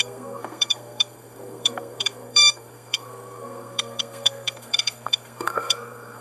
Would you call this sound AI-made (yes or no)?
yes